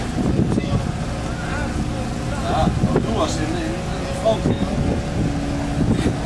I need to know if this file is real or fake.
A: real